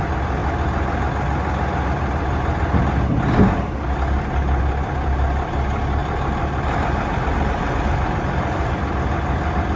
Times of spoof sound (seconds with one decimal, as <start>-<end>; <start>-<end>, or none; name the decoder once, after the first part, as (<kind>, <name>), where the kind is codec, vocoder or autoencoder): 6.0-8.7 (vocoder, BigVGAN v2)

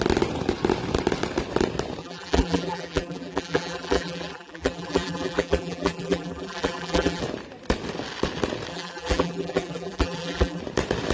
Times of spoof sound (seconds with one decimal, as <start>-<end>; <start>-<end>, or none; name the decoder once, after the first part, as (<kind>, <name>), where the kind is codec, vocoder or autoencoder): 2.0-7.2 (vocoder, BigVGAN v2); 8.7-10.6